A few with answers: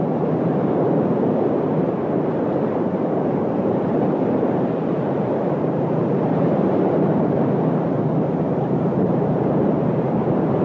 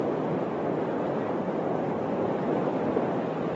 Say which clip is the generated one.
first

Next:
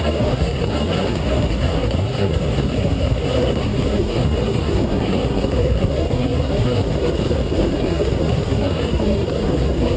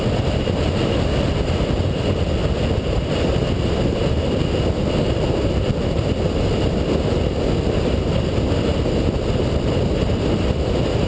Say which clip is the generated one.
first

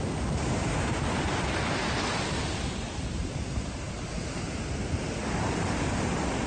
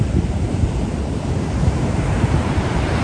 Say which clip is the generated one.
second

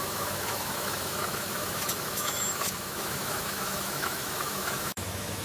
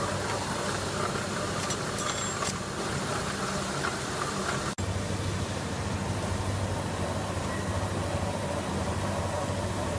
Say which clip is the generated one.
first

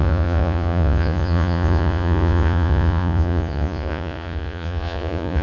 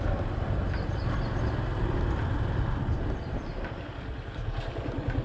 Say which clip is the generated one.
first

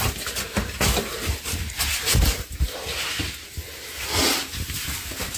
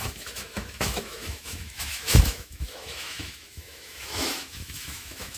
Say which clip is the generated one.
second